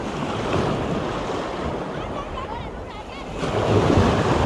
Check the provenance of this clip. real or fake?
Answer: real